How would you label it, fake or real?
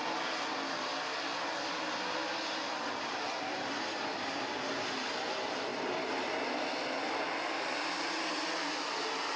real